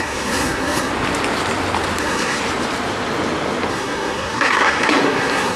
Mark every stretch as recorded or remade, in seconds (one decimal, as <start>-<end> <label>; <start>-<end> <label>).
0.0-0.9 remade; 0.9-2.0 recorded; 2.0-2.4 remade; 2.4-3.7 recorded; 3.7-5.6 remade